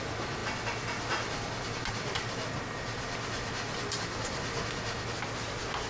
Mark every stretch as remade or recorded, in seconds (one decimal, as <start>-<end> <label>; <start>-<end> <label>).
0.0-5.9 recorded